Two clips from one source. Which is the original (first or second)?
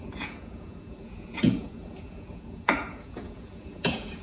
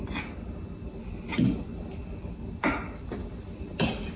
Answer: second